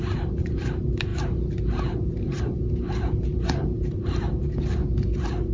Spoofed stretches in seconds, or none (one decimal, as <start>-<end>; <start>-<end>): none